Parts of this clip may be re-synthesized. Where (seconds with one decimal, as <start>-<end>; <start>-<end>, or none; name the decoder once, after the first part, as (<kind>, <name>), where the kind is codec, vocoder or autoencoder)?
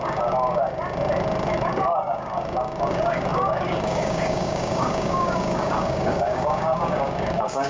0.0-0.6 (codec, DAC); 1.5-7.7